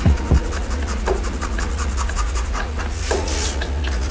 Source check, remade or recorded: remade